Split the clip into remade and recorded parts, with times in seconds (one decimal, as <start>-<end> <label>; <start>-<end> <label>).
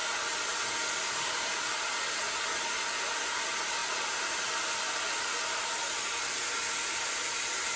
0.0-7.8 recorded